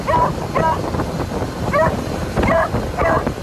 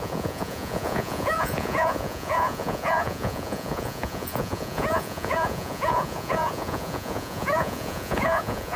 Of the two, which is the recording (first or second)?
first